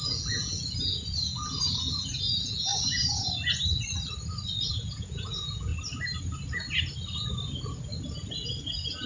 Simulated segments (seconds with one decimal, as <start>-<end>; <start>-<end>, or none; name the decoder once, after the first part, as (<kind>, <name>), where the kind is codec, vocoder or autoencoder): 0.0-2.7 (vocoder, Vocos); 4.7-5.7